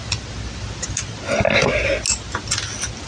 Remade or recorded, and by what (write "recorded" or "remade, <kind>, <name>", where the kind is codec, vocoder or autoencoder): recorded